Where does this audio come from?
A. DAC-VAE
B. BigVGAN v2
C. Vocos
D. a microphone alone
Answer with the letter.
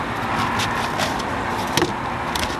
D